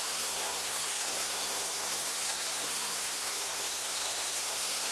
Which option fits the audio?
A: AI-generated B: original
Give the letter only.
A